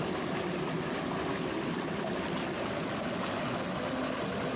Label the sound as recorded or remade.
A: recorded